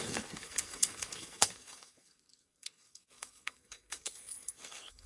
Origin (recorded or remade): remade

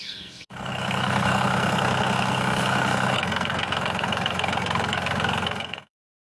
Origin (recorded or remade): remade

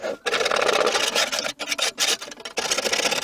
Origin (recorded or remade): recorded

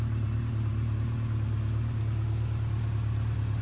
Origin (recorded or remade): recorded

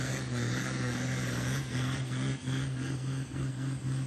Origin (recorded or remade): remade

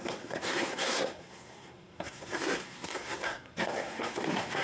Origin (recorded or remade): remade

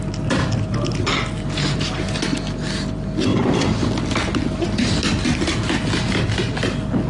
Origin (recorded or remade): recorded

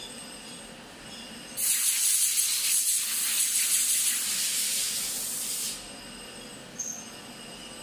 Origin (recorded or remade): recorded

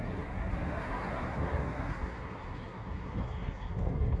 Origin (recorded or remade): remade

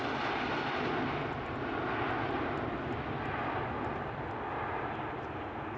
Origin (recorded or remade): recorded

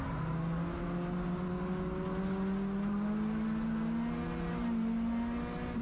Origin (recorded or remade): recorded